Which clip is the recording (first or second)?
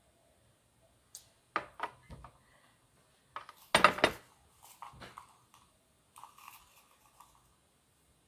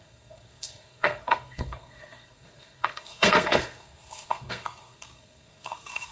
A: first